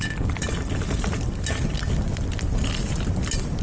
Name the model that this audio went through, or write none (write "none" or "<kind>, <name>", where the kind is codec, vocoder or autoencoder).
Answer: none